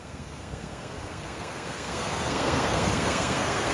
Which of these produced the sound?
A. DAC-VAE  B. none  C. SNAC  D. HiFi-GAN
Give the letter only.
C